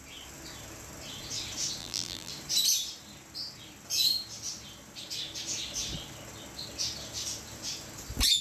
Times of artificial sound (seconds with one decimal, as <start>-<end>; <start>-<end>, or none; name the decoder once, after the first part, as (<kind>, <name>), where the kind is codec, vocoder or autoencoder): 1.8-2.3 (vocoder, BigVGAN v2)